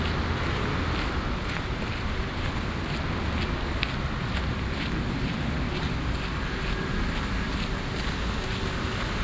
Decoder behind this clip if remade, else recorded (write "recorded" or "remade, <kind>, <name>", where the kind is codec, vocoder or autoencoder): recorded